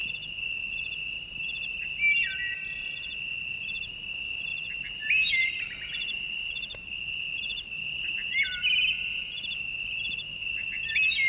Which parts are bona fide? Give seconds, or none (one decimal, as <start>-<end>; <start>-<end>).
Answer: 0.0-4.5; 7.7-11.3

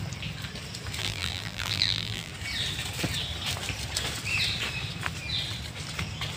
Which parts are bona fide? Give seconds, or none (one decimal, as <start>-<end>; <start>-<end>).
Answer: 0.0-1.0; 2.3-6.4